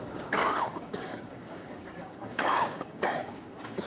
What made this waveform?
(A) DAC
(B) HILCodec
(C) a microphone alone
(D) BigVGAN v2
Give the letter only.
A